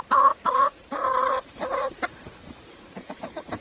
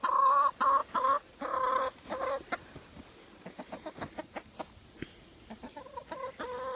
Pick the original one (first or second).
second